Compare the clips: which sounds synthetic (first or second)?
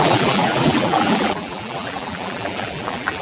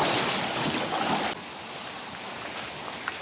first